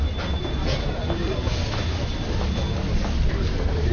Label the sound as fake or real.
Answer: real